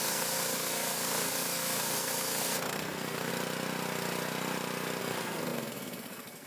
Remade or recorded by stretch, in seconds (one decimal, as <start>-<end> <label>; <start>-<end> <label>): 0.0-3.3 remade; 3.3-5.0 recorded; 5.0-6.5 remade